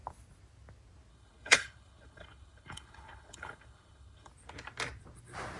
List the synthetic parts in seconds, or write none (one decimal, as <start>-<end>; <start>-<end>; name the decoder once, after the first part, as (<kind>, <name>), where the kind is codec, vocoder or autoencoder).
1.1-4.3 (codec, HILCodec)